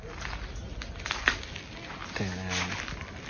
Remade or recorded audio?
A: recorded